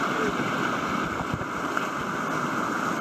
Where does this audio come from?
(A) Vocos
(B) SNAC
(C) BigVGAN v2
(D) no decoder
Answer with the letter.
D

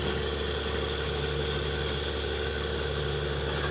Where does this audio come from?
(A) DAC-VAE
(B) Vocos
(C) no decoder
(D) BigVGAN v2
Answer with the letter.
C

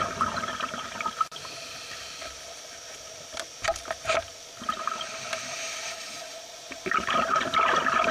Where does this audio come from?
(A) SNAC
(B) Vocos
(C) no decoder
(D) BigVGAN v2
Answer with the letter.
D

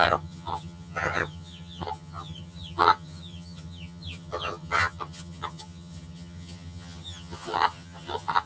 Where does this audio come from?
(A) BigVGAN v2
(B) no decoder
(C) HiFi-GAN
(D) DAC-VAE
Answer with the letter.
C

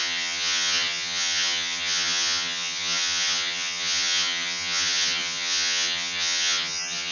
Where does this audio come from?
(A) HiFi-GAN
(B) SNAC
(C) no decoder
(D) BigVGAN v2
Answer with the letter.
A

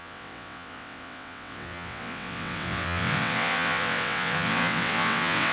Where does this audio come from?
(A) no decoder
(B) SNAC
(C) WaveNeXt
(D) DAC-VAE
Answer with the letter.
C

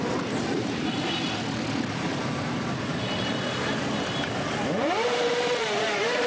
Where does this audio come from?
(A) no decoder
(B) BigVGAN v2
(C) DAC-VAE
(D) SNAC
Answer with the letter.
B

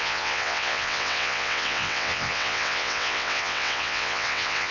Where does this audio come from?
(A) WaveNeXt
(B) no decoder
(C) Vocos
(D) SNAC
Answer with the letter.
A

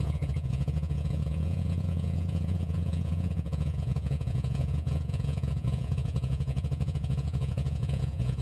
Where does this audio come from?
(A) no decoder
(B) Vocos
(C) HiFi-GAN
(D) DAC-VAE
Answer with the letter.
B